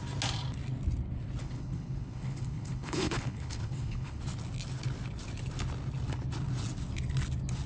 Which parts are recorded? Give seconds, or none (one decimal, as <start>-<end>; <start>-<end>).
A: 0.0-1.4; 4.2-7.7